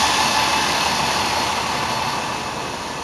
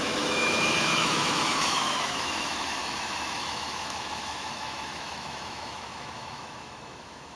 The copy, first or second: second